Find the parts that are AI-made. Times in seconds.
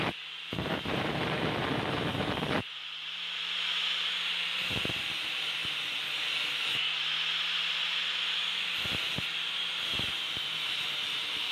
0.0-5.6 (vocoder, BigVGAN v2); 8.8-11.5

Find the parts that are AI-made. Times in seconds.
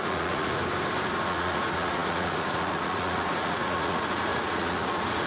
0.0-0.6 (vocoder, Vocos); 1.1-5.3